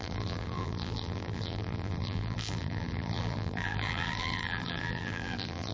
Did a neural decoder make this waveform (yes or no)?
yes